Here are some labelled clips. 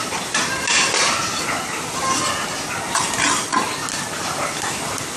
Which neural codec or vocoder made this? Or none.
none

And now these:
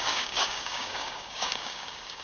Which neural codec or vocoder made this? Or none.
codec, DAC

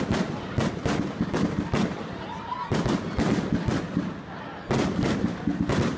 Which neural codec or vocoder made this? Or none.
none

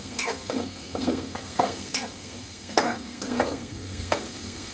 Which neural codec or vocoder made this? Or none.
codec, SNAC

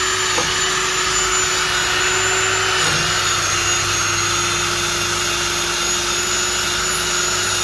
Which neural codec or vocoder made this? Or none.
none